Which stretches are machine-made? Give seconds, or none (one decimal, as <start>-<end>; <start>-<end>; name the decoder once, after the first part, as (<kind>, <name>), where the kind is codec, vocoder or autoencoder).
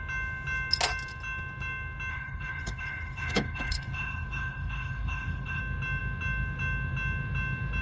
2.1-5.6 (codec, HILCodec)